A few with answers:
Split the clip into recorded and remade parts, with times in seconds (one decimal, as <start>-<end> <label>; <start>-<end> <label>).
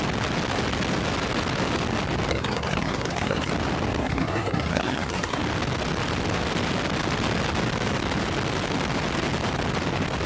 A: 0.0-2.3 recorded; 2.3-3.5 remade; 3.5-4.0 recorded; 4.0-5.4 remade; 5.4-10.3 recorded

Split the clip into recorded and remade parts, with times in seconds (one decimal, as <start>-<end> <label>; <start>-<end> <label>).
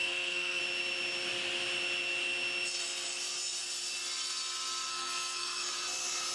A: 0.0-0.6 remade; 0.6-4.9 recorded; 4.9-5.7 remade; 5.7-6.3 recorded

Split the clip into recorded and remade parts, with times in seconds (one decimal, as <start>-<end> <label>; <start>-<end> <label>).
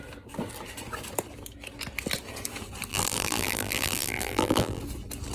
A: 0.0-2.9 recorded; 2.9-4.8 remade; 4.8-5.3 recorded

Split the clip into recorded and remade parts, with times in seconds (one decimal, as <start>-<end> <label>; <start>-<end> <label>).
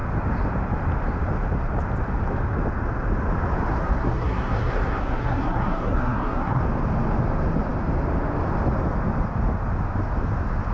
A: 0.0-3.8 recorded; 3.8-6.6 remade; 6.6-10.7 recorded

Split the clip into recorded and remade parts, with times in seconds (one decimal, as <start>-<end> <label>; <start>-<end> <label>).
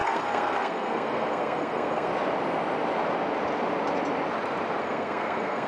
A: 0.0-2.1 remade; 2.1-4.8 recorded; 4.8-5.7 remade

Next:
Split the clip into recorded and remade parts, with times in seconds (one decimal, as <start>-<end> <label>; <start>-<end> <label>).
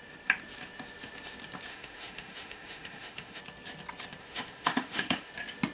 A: 0.0-1.7 recorded; 1.7-3.4 remade; 3.4-4.2 recorded; 4.2-5.3 remade; 5.3-5.7 recorded